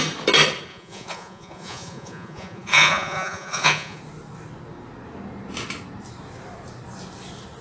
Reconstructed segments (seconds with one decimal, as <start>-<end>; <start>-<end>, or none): 0.7-4.0